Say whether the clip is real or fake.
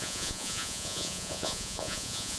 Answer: fake